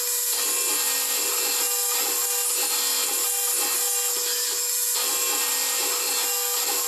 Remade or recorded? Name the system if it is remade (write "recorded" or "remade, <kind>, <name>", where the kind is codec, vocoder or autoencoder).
recorded